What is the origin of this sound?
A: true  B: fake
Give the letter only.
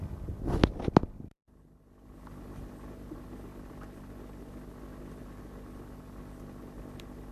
A